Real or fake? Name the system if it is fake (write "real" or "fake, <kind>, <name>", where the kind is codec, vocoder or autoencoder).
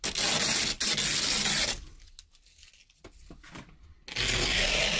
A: real